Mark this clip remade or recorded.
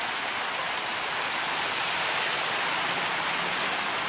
recorded